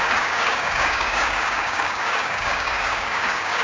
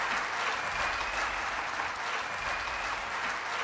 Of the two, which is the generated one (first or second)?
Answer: first